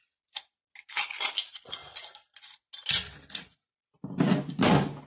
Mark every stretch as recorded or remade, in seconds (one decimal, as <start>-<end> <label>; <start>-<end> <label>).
0.0-5.1 recorded